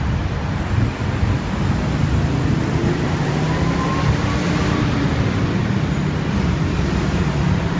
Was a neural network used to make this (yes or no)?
no